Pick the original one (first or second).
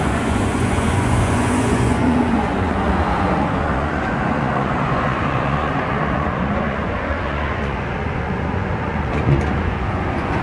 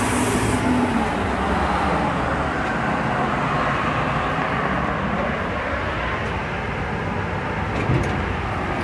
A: second